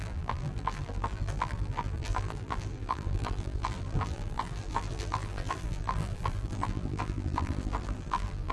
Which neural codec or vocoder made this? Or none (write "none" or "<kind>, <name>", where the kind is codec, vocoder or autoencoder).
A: vocoder, BigVGAN v2